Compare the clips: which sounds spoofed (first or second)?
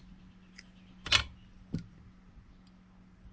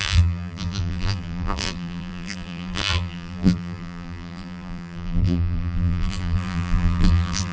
second